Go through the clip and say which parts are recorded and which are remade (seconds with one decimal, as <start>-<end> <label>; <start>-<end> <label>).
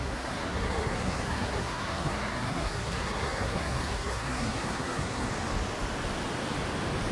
0.0-5.3 remade; 5.3-7.1 recorded